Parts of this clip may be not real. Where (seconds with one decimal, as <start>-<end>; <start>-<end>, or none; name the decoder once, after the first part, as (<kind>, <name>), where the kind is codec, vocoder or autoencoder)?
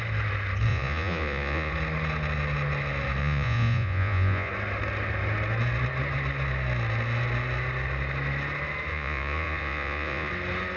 0.7-1.7 (vocoder, Vocos); 3.2-4.5; 8.9-10.3